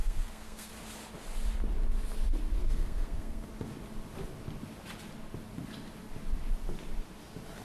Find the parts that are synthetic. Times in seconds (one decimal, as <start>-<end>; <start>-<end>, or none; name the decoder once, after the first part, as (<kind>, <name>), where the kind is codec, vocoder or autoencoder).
0.0-0.7 (codec, SNAC); 2.6-3.5